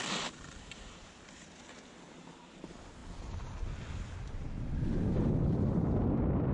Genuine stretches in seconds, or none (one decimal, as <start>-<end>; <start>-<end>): 0.0-6.5

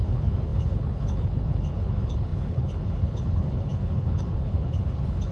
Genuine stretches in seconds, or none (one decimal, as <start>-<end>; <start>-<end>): none

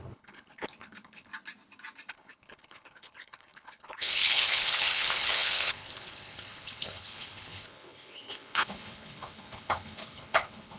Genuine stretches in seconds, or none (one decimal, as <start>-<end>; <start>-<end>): 1.3-2.1

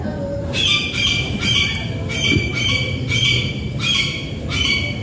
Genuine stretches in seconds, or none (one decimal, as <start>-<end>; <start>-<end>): 0.0-5.0